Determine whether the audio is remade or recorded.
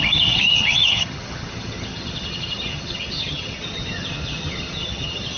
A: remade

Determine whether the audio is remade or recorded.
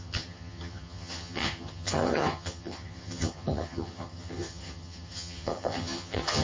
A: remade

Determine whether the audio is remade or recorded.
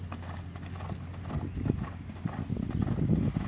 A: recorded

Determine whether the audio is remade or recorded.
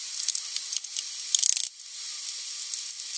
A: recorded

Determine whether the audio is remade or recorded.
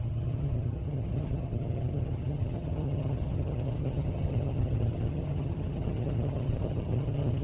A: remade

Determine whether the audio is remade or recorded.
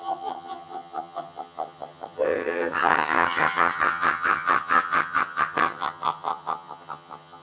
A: remade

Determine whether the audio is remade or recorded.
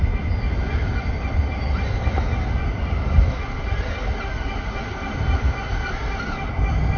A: recorded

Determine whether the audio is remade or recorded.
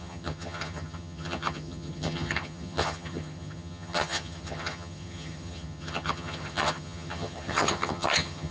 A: remade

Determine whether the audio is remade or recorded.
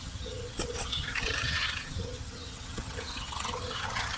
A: remade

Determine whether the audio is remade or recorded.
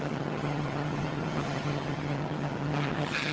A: remade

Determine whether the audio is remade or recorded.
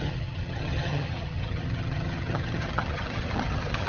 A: remade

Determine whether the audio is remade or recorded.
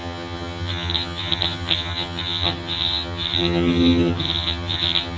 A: remade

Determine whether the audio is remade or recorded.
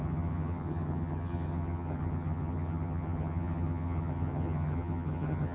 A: remade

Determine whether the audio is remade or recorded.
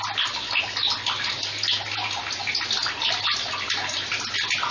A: recorded